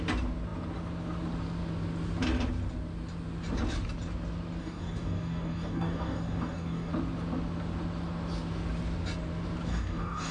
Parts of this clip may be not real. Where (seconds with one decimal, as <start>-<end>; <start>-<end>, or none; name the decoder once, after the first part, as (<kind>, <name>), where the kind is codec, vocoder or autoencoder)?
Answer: 4.6-6.9 (codec, DAC); 9.7-10.3